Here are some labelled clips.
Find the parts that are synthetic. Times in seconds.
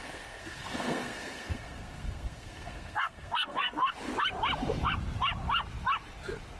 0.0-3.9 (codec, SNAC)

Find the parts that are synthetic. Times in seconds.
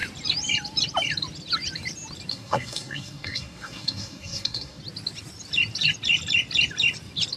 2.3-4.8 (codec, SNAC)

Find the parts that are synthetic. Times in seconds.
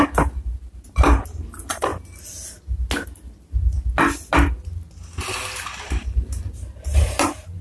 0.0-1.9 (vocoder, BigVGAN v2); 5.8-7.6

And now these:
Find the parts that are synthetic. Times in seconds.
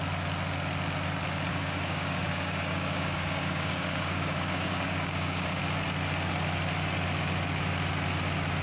1.5-5.6 (codec, DAC)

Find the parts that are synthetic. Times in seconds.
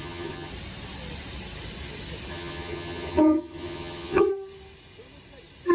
0.0-0.5 (vocoder, HiFi-GAN); 2.3-4.3